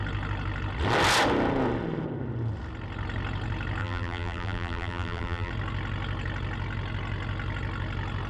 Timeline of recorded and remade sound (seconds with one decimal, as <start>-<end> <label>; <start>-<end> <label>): 0.0-3.8 recorded; 3.8-5.5 remade; 5.5-8.3 recorded